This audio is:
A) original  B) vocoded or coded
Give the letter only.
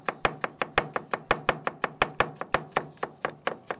A